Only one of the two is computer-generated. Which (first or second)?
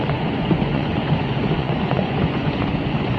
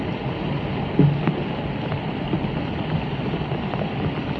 first